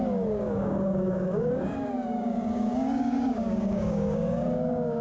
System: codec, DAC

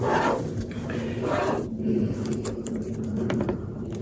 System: vocoder, BigVGAN v2